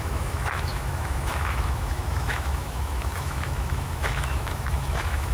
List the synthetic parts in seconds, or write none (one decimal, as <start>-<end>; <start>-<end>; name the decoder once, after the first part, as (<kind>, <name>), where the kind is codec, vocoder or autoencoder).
0.0-5.3 (autoencoder, DAC-VAE)